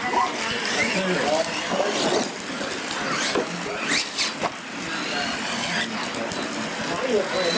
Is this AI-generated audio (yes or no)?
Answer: no